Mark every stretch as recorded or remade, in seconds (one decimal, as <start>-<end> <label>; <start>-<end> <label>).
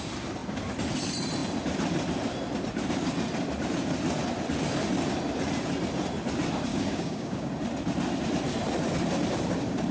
0.0-6.7 recorded; 6.7-7.5 remade; 7.5-9.9 recorded